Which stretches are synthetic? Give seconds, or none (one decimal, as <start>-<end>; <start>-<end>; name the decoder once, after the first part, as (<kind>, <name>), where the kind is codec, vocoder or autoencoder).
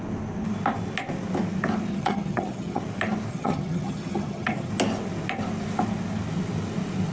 1.9-2.8 (vocoder, HiFi-GAN); 3.3-4.7